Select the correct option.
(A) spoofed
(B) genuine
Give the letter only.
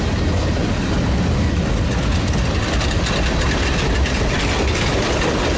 B